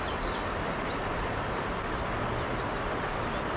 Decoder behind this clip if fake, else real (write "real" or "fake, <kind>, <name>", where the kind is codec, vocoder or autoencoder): real